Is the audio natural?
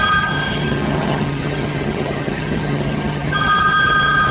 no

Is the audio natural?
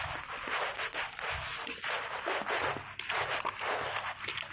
yes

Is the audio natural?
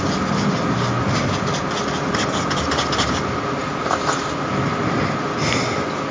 yes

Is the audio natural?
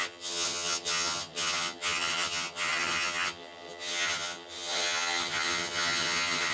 no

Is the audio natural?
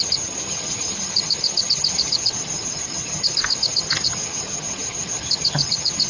no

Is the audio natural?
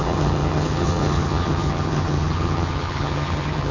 no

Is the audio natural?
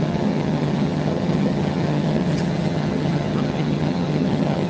no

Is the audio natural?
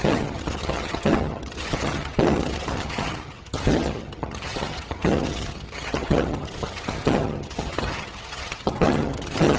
no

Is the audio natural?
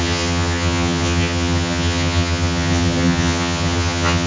no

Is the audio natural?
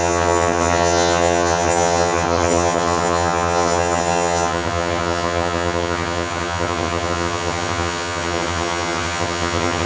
no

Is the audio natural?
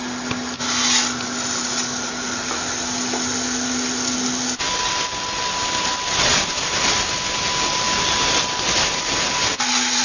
yes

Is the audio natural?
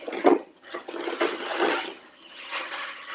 no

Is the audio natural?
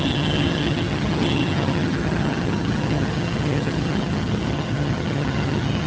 no